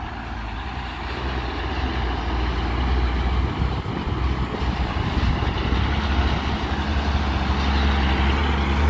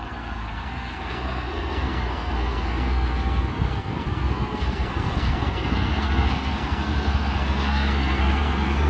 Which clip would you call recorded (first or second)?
first